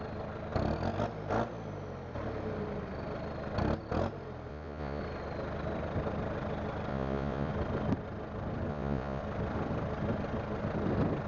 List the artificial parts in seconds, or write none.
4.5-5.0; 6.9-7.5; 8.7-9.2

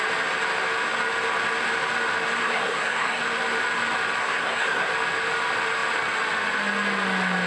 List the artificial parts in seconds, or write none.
2.4-3.2; 4.2-4.9

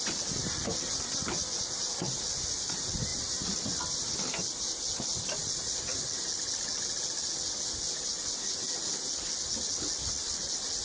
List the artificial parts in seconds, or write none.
3.1-4.3

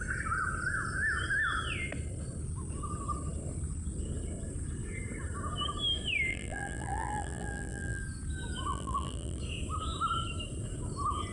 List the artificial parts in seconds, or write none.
6.3-8.0; 8.7-9.4

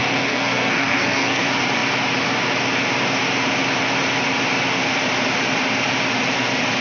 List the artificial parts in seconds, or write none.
0.0-1.4

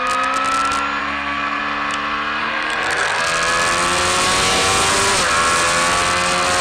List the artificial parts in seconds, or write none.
1.0-1.6; 2.4-3.2

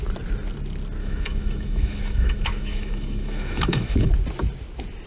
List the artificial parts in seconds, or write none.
1.0-4.1

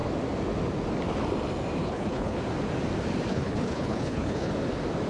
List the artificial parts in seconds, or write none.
1.8-2.4; 3.3-4.5